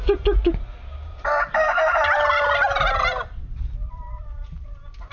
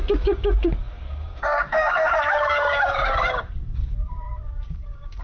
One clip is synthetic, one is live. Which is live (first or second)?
first